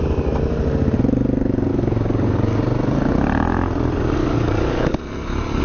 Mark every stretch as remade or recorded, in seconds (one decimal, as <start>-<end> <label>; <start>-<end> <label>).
0.0-1.7 recorded; 1.7-2.6 remade; 2.6-4.2 recorded; 4.2-5.0 remade; 5.0-5.6 recorded